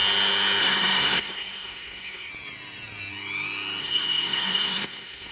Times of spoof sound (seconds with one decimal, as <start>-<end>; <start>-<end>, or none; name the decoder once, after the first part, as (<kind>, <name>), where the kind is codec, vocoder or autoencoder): 0.6-2.3 (codec, SNAC); 3.8-5.3